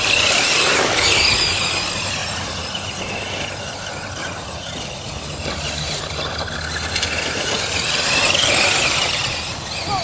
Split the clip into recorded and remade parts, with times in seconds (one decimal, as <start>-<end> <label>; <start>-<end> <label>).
0.0-2.2 recorded; 2.2-3.0 remade; 3.0-4.2 recorded; 4.2-5.1 remade; 5.1-10.0 recorded